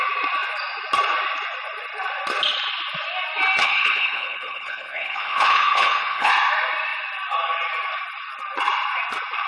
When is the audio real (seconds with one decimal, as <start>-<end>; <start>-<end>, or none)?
0.0-3.6; 6.3-9.5